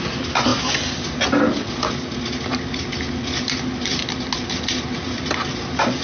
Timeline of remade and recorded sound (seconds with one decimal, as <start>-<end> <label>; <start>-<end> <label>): 0.0-6.0 recorded